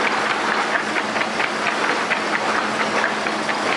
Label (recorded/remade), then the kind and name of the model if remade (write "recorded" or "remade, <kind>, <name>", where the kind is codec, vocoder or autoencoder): recorded